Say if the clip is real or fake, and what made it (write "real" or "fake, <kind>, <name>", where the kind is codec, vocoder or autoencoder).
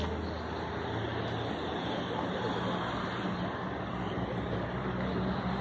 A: real